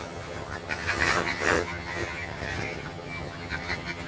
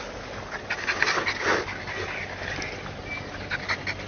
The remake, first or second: first